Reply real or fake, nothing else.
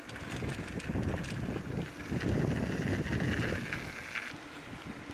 real